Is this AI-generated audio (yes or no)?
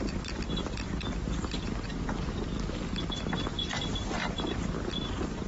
yes